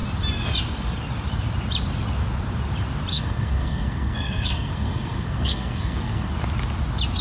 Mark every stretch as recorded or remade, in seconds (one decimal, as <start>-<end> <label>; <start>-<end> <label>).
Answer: 0.0-3.1 recorded; 3.1-6.3 remade; 6.3-7.2 recorded